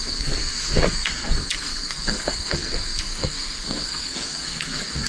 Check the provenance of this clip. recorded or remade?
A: remade